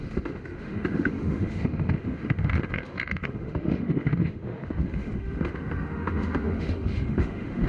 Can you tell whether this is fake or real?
fake